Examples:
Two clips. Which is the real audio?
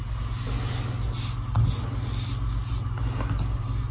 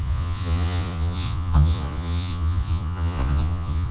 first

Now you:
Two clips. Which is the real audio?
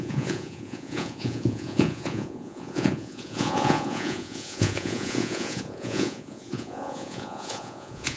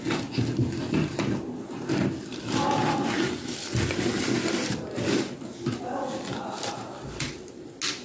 second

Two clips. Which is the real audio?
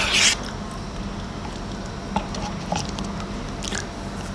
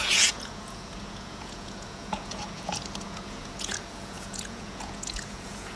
first